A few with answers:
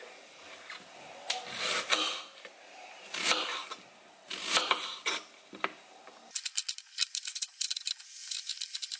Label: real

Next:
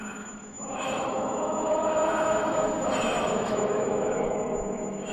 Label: fake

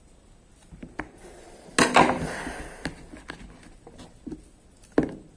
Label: real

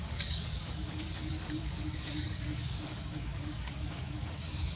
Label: fake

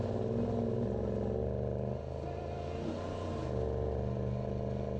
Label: real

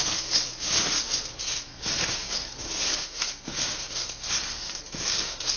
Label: fake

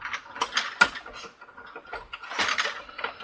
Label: real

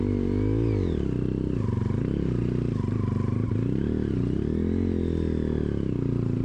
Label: real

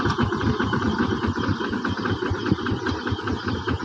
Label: real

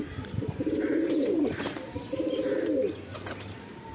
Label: fake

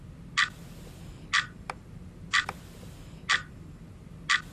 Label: real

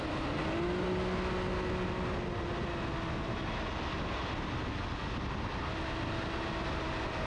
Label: real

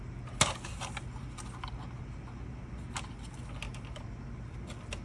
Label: real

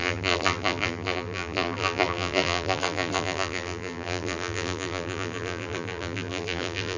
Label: fake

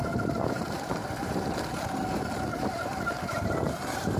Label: fake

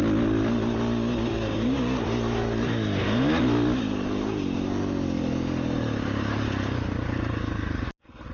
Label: real